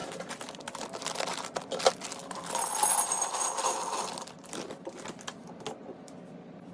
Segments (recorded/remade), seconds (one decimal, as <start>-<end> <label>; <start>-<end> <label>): 0.0-6.7 recorded